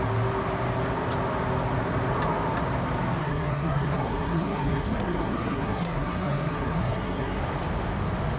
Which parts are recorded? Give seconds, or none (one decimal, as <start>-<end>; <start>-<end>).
0.0-3.2; 7.4-8.4